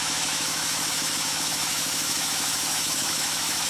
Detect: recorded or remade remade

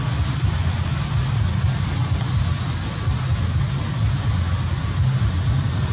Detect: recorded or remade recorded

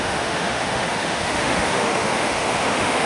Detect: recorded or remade remade